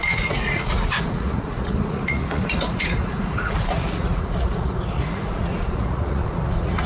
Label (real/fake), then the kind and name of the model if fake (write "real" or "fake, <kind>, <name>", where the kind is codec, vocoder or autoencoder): fake, vocoder, Vocos